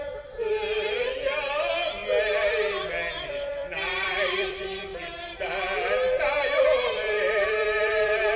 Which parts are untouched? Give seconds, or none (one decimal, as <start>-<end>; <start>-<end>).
2.0-3.1; 4.9-6.9